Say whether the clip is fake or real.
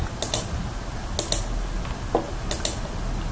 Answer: real